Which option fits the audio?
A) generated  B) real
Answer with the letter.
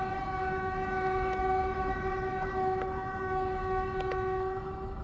A